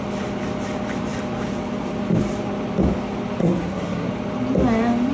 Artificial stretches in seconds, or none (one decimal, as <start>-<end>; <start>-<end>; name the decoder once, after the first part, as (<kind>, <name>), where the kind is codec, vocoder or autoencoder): 3.4-4.1 (codec, SNAC)